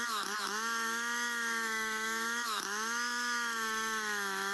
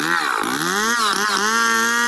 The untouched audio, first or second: second